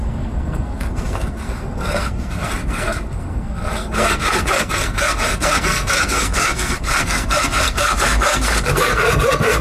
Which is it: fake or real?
fake